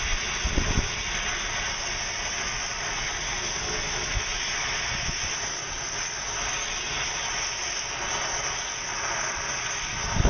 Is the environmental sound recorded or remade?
recorded